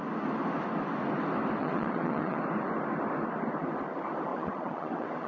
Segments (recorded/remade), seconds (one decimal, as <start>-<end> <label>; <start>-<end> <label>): 0.0-1.6 recorded; 1.6-2.4 remade; 2.4-4.3 recorded; 4.3-5.3 remade